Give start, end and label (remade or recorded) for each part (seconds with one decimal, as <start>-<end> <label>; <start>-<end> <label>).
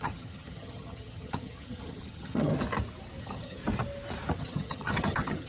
0.0-2.5 remade; 2.5-3.2 recorded; 3.2-3.6 remade; 3.6-4.4 recorded; 4.4-5.5 remade